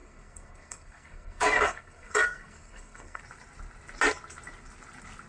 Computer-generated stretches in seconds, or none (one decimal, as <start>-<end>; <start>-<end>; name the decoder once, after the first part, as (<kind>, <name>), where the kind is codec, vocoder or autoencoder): 0.0-3.2 (codec, SNAC)